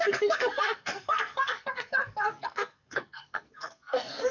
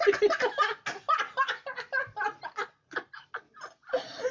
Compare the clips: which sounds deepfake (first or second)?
first